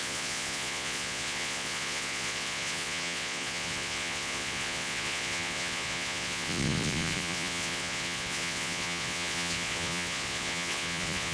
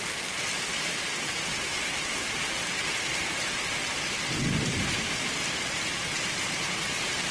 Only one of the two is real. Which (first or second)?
second